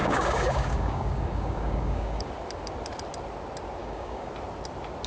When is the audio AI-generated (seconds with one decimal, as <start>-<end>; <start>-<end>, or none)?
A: 0.0-2.3; 3.8-4.3